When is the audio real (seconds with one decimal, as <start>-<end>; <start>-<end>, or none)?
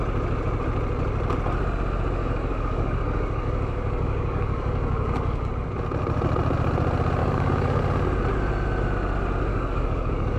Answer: 0.0-2.2; 5.5-7.2; 7.8-9.5